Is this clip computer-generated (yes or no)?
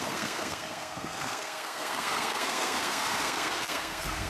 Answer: yes